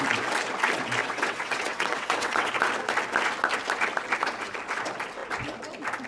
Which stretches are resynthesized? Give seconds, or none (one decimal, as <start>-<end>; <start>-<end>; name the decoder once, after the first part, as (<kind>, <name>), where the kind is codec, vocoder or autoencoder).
1.0-2.5 (vocoder, WaveNeXt)

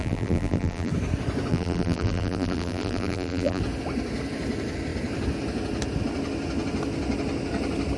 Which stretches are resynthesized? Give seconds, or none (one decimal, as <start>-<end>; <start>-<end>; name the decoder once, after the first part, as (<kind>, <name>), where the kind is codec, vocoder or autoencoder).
0.0-0.9 (vocoder, BigVGAN v2); 1.5-3.6

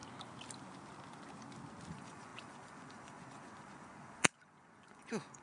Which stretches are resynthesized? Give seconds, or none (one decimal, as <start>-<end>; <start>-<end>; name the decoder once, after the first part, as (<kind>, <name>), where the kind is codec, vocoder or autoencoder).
1.9-5.4 (vocoder, Vocos)

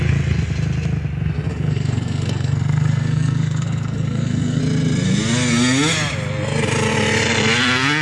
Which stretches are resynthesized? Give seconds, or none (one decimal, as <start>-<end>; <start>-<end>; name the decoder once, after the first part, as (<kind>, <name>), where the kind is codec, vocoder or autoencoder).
1.5-4.6 (codec, SNAC)

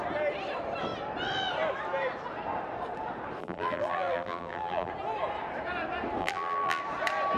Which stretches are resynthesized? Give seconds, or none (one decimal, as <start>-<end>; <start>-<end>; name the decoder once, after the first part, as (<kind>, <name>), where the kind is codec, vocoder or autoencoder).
3.4-4.9 (vocoder, BigVGAN v2); 6.2-6.8

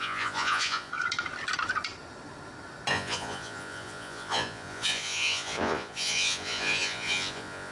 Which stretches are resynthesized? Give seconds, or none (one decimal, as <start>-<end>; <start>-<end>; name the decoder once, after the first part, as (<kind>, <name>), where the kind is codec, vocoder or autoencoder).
0.0-0.9 (vocoder, Vocos); 2.9-7.7

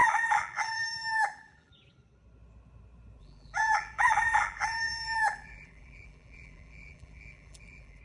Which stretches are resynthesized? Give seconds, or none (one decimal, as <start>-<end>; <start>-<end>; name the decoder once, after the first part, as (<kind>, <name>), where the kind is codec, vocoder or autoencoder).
0.0-1.7 (vocoder, BigVGAN v2); 3.2-8.0

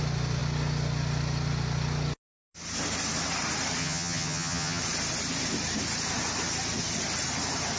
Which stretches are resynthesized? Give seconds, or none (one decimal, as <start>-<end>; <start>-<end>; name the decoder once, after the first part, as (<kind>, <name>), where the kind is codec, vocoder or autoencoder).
3.8-4.8 (vocoder, HiFi-GAN)